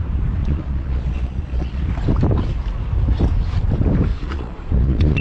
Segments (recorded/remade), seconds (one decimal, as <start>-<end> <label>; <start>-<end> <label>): 0.0-0.4 recorded; 0.4-1.8 remade; 1.8-4.1 recorded; 4.1-5.2 remade